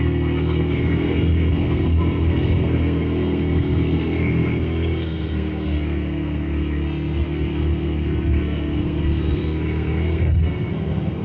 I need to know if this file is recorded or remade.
remade